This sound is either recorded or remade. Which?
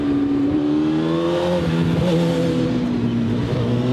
recorded